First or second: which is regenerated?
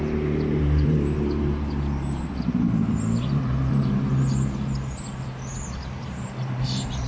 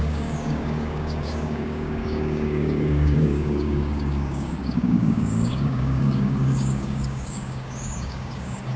second